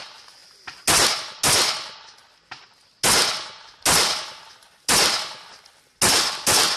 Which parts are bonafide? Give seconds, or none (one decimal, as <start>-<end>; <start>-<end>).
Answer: 0.0-6.8